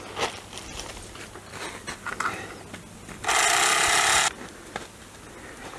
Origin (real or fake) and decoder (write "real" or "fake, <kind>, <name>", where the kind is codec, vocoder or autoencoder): real